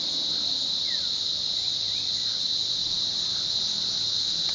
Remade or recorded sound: recorded